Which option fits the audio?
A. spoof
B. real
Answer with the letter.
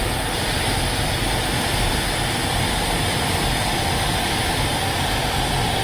B